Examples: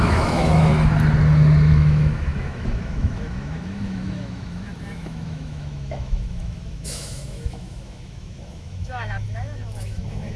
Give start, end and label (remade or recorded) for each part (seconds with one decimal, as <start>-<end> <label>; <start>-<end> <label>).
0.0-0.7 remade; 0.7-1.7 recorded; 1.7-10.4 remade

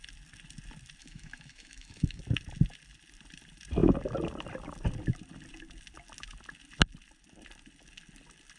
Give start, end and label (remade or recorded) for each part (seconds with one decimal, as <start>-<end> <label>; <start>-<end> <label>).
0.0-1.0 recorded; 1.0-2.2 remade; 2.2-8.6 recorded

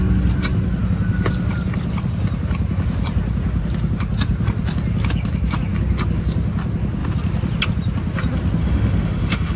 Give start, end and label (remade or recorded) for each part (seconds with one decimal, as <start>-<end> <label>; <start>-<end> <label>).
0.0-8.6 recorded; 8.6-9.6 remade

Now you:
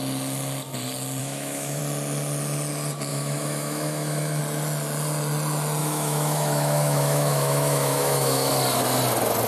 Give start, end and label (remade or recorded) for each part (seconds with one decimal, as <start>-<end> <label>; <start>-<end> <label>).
0.0-1.2 recorded; 1.2-1.8 remade; 1.8-3.1 recorded; 3.1-4.4 remade; 4.4-5.8 recorded; 5.8-8.5 remade; 8.5-9.5 recorded

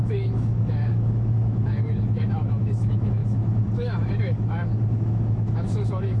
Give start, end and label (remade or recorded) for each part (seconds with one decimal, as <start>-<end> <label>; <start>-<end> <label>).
0.0-6.2 remade

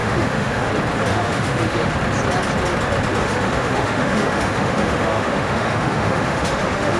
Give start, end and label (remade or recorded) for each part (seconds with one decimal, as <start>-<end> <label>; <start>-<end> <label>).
0.0-0.7 remade; 0.7-1.1 recorded; 1.1-1.9 remade; 1.9-3.2 recorded; 3.2-7.0 remade